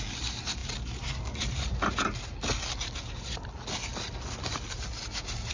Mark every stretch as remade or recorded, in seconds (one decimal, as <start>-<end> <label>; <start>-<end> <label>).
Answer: 0.0-5.5 recorded